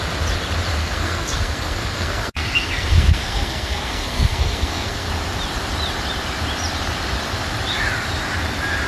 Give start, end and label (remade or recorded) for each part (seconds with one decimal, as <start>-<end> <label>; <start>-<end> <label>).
0.0-0.8 recorded; 0.8-5.1 remade; 5.1-8.9 recorded